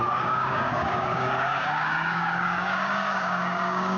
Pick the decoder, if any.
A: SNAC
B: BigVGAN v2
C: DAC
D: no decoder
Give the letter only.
C